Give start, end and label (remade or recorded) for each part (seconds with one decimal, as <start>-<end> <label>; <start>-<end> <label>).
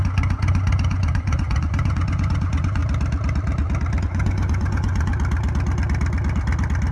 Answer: 0.0-2.8 remade; 2.8-4.0 recorded; 4.0-5.1 remade; 5.1-6.9 recorded